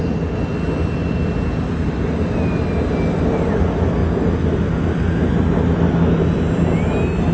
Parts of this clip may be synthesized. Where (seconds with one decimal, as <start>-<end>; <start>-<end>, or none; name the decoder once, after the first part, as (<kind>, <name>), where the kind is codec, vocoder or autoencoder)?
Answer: none